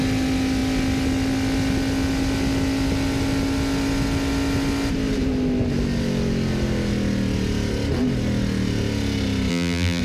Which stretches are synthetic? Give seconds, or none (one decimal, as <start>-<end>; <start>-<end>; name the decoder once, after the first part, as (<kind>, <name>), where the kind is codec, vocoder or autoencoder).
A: 9.5-10.0 (vocoder, BigVGAN v2)